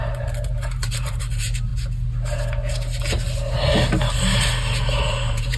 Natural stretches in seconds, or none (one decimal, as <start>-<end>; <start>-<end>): 1.7-5.0